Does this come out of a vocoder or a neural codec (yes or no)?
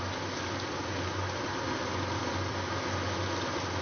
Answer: no